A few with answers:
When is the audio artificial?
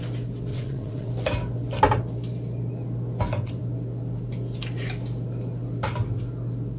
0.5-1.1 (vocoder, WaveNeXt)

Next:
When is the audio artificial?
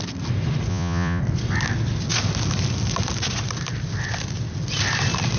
0.7-1.2 (vocoder, Vocos)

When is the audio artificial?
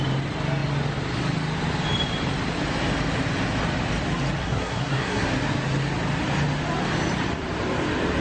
4.4-5.3 (codec, SNAC)